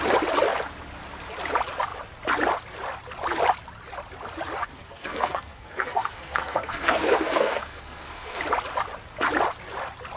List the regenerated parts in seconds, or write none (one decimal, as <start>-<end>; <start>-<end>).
4.6-8.4